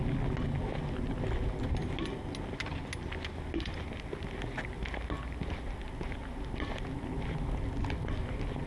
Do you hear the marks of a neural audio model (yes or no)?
no